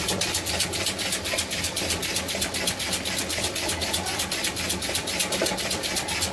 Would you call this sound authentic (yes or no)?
yes